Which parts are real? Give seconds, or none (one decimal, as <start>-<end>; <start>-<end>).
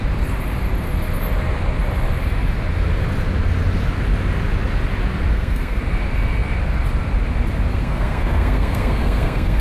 0.0-5.3; 5.8-7.7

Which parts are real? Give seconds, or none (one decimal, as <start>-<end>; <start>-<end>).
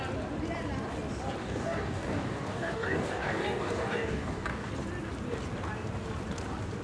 0.0-1.4; 4.7-6.8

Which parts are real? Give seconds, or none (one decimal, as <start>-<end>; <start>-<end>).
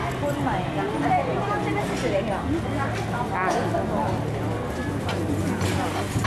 0.0-6.3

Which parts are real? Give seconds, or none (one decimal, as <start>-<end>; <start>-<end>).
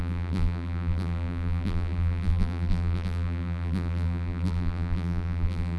none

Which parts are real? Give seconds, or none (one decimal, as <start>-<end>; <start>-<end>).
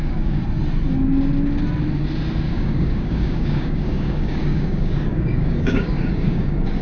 0.4-2.5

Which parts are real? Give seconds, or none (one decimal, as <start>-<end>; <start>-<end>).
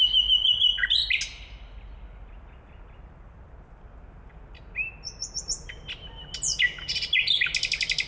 0.0-8.1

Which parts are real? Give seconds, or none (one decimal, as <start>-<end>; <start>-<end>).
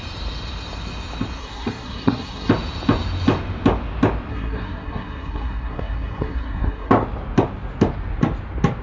0.0-1.4; 2.5-4.3; 6.9-8.8